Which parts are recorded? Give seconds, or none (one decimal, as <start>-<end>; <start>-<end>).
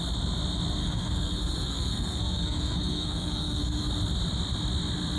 0.0-0.8; 3.9-5.2